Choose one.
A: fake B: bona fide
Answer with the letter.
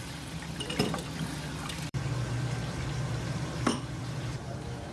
A